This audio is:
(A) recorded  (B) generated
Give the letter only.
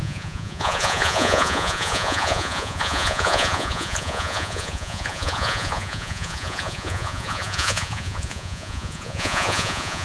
B